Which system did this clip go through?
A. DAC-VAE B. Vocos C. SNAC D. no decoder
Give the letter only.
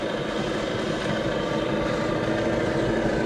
D